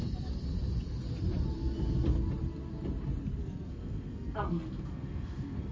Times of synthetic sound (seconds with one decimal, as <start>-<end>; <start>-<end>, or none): 3.4-5.7